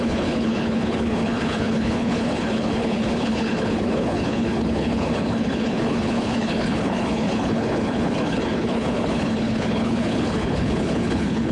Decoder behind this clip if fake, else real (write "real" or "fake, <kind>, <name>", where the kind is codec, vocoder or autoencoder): fake, codec, HILCodec